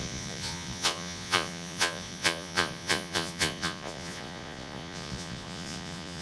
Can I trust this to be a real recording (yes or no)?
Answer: no